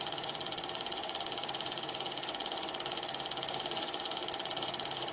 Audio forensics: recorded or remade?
remade